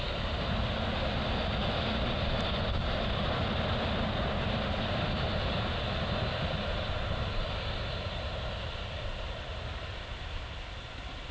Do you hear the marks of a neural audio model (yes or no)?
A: no